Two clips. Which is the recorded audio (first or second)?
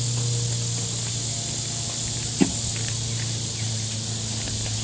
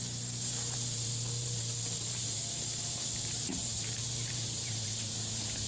first